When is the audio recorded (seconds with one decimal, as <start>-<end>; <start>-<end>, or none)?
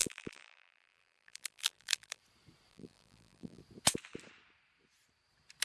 2.2-2.7; 3.6-5.6